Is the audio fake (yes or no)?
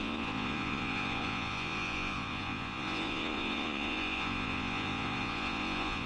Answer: yes